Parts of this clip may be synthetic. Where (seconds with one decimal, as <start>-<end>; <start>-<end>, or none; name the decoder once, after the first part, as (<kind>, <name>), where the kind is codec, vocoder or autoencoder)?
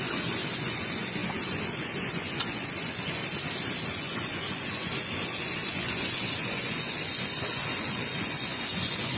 0.0-3.2 (vocoder, Vocos); 3.9-9.2